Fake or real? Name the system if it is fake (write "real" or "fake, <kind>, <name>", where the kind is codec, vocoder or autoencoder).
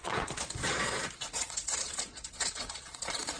fake, vocoder, Vocos